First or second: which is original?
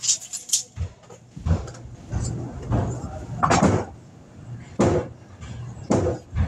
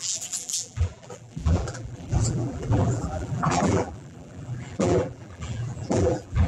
first